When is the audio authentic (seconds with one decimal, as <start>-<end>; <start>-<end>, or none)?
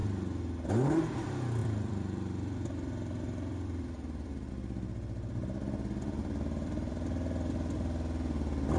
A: 0.0-1.6; 4.5-6.2; 6.9-8.8